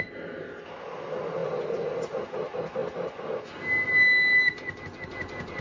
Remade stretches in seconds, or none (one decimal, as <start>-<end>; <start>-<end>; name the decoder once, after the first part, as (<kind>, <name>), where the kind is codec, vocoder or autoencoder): none